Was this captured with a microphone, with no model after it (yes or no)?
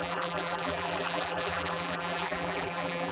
no